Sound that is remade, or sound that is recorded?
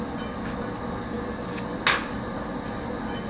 recorded